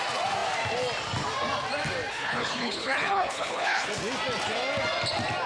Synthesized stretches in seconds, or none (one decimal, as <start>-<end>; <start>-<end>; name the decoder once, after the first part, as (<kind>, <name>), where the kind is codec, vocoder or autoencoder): 2.1-3.9 (codec, HILCodec)